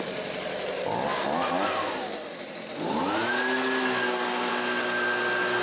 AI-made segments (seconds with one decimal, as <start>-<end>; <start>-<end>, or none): none